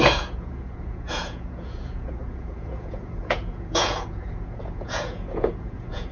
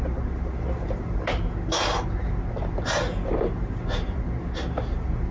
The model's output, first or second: first